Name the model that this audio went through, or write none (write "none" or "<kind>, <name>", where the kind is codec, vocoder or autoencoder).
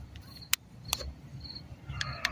none